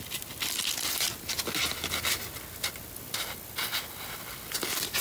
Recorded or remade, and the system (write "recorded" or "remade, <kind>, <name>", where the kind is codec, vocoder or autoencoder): recorded